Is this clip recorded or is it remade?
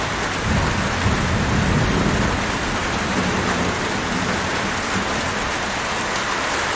recorded